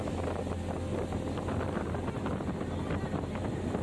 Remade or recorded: recorded